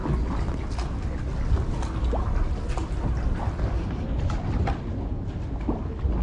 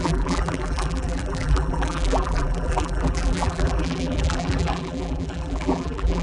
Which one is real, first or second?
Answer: first